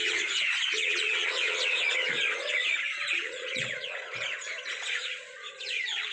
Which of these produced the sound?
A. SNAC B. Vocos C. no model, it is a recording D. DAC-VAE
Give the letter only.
B